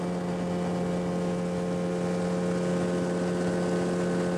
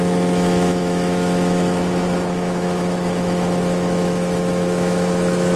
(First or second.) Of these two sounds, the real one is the first